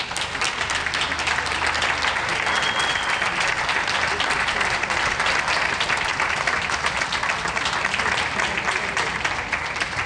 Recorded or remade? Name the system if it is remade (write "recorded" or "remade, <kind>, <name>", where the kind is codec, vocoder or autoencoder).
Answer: recorded